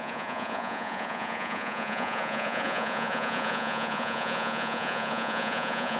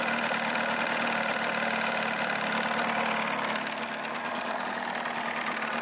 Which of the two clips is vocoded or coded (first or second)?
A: first